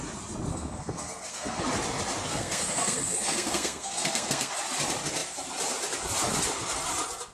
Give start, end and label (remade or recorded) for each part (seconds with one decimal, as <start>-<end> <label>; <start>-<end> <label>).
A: 0.0-0.5 recorded; 0.5-1.6 remade; 1.6-2.3 recorded; 2.3-4.5 remade; 4.5-7.3 recorded